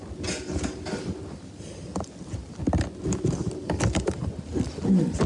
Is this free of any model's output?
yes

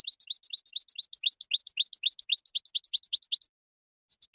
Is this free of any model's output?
yes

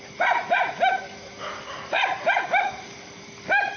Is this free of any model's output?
yes